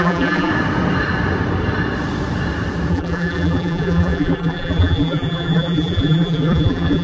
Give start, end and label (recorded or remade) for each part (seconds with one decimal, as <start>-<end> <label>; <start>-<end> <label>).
0.0-0.5 remade; 0.5-2.9 recorded; 2.9-7.0 remade